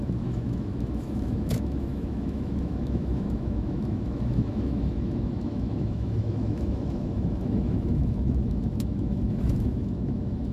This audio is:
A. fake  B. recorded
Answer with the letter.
A